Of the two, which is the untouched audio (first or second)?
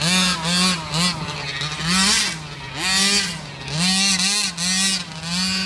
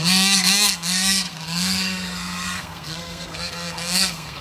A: first